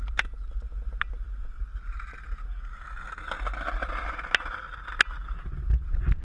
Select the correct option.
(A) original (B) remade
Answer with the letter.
A